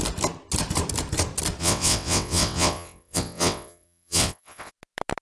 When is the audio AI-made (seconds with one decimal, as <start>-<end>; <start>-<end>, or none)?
1.6-4.7